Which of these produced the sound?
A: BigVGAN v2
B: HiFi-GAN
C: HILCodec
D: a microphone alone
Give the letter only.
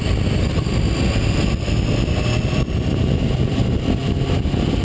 D